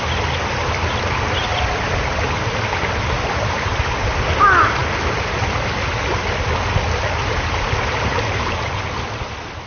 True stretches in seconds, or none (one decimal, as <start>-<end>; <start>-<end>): 0.0-9.7